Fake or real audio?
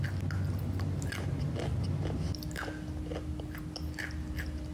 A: real